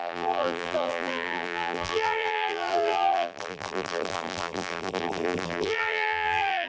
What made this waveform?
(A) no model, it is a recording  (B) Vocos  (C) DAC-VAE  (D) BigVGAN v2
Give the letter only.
D